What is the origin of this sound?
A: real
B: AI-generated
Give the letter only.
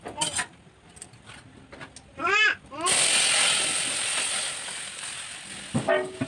A